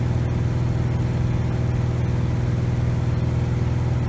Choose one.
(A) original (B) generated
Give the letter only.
A